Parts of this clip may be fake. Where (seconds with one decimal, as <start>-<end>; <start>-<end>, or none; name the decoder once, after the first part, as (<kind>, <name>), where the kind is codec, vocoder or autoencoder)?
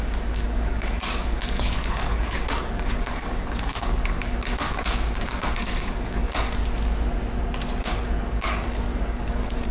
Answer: 0.0-6.6 (codec, DAC); 7.8-9.7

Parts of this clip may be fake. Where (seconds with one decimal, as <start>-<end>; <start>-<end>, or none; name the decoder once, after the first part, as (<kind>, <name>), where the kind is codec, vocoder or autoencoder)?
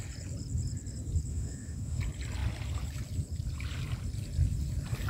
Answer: 1.3-2.0 (autoencoder, DAC-VAE)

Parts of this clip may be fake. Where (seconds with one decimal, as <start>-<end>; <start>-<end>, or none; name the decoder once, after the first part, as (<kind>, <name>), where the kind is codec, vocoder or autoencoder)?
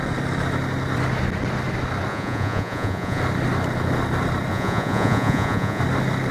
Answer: 2.1-3.2 (vocoder, Vocos); 4.5-5.8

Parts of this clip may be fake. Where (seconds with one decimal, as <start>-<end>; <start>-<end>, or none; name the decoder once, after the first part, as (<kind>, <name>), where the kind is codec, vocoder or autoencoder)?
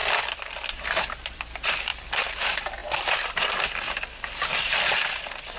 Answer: 0.0-1.7 (vocoder, BigVGAN v2)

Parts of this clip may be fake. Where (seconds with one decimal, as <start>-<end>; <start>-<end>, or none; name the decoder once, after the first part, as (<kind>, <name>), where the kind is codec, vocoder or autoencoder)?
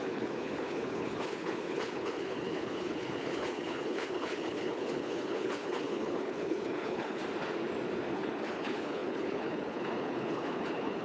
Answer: 0.0-7.2 (codec, HILCodec); 8.1-11.0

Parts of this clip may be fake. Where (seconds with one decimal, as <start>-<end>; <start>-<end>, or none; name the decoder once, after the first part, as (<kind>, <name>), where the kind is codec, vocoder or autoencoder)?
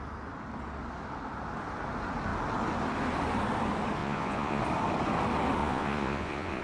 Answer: 4.0-4.6 (vocoder, Vocos); 5.6-6.6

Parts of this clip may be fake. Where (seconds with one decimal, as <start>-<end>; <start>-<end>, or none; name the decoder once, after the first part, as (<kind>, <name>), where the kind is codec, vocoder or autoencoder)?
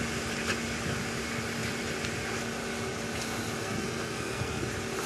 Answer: 3.6-4.6 (codec, SNAC)